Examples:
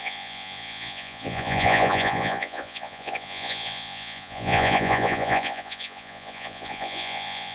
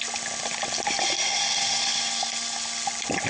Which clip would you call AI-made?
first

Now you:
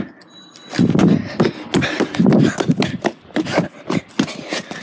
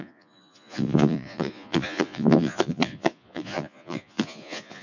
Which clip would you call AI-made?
second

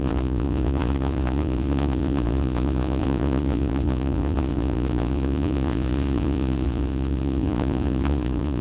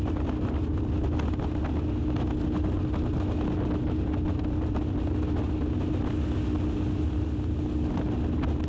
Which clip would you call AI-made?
first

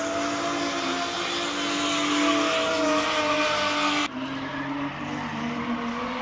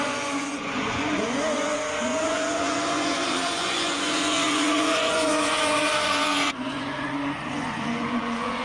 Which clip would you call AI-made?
second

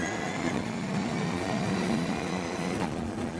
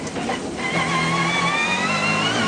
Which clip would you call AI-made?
first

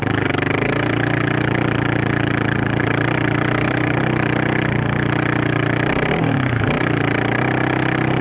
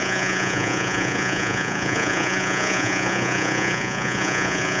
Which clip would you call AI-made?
second